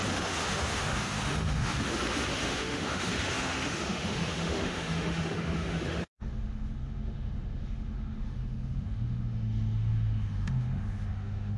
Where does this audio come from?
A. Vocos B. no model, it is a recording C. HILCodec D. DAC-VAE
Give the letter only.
D